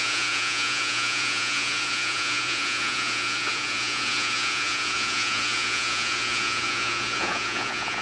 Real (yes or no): no